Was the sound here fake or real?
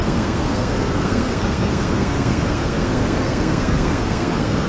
fake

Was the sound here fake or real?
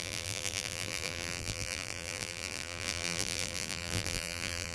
fake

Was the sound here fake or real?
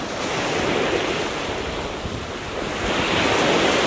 real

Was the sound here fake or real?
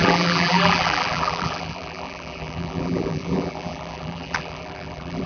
fake